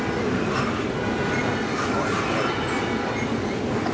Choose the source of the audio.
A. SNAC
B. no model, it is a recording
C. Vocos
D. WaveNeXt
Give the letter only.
B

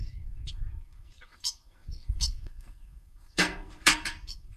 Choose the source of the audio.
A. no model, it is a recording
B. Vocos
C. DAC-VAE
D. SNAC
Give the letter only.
D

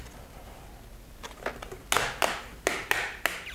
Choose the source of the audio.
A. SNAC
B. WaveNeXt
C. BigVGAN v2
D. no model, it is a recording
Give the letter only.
D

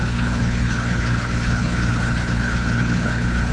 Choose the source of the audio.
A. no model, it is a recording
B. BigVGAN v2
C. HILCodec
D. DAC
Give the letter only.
C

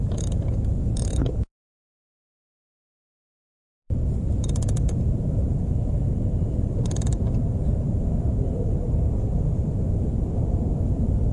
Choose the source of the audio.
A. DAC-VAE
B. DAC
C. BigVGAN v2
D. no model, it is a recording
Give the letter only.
C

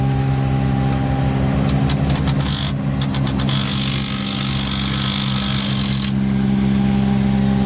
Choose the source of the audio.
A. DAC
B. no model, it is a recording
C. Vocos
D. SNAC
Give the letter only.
B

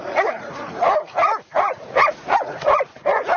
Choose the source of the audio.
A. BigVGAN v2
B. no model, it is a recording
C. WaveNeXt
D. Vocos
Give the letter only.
D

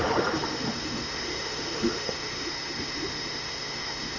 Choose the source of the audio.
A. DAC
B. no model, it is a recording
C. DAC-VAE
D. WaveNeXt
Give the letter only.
C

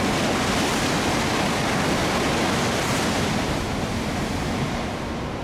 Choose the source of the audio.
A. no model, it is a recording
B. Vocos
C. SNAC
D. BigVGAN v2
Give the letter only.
A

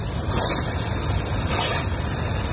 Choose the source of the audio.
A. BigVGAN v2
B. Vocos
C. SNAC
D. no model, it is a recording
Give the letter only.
D